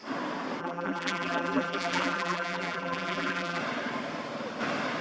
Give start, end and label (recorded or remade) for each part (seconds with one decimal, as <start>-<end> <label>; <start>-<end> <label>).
0.0-0.6 recorded; 0.6-3.6 remade; 3.6-5.0 recorded